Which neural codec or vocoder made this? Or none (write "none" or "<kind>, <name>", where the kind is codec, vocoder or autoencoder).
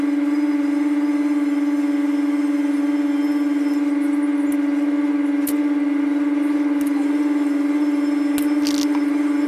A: none